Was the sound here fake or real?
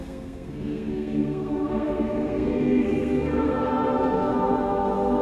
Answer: fake